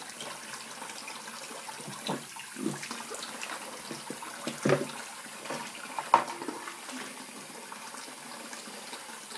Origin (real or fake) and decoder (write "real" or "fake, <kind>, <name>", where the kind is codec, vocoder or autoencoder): real